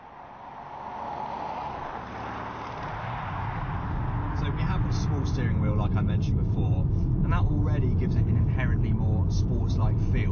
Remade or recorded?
recorded